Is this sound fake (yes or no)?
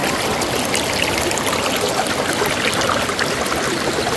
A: no